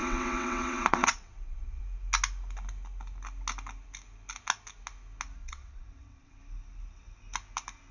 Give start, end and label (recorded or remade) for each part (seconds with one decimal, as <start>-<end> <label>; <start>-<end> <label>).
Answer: 0.0-1.8 remade; 1.8-5.4 recorded; 5.4-6.4 remade; 6.4-7.9 recorded